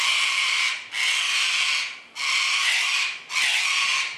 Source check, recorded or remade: recorded